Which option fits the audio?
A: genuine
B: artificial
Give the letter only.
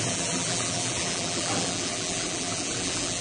B